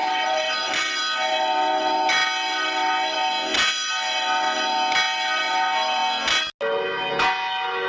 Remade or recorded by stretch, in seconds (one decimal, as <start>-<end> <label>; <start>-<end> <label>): 0.0-1.0 remade; 1.0-7.9 recorded